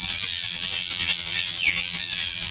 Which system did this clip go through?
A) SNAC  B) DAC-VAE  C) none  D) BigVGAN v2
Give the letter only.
D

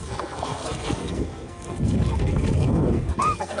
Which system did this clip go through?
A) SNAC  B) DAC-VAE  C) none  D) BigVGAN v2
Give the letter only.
A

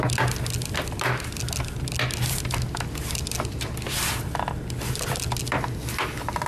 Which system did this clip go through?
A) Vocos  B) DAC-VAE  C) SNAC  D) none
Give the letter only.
D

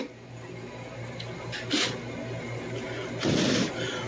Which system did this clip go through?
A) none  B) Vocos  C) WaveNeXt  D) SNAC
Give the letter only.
A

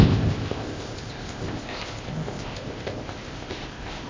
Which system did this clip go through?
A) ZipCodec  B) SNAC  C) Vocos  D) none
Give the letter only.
A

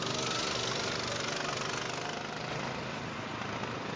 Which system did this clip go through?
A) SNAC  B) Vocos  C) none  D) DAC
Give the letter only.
C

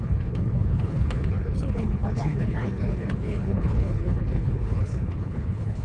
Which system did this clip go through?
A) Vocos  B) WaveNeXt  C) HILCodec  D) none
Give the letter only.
C